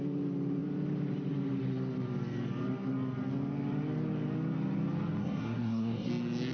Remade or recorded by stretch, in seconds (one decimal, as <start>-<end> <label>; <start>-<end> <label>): 0.0-5.2 recorded; 5.2-6.1 remade; 6.1-6.5 recorded